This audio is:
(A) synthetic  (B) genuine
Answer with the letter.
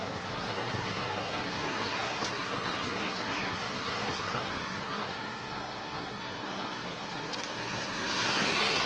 A